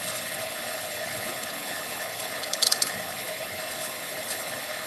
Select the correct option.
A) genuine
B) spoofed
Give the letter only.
B